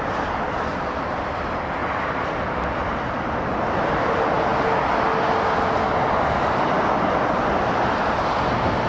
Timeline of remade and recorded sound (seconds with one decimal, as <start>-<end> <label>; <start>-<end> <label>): 0.0-8.9 recorded